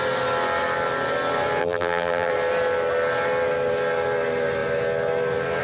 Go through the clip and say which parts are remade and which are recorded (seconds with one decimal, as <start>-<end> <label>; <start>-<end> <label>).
0.0-1.6 recorded; 1.6-2.3 remade; 2.3-5.6 recorded